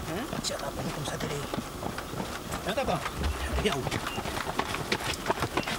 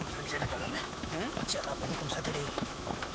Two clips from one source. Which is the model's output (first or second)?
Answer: second